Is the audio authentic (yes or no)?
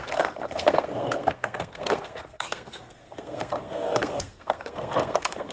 no